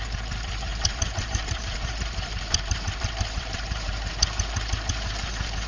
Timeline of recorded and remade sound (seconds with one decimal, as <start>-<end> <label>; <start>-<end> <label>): 0.0-0.7 recorded; 0.7-4.1 remade; 4.1-5.7 recorded